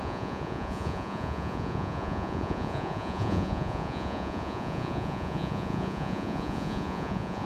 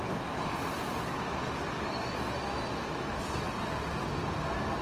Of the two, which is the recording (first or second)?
second